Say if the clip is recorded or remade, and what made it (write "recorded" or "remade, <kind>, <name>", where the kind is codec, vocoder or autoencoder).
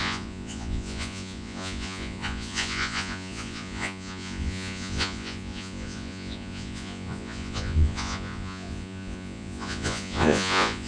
remade, vocoder, Vocos